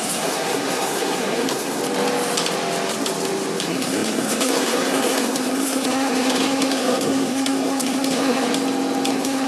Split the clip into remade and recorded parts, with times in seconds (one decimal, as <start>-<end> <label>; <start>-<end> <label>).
0.0-1.8 remade; 1.8-3.6 recorded; 3.6-8.5 remade; 8.5-9.1 recorded; 9.1-9.5 remade